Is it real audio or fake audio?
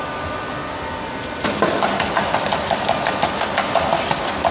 real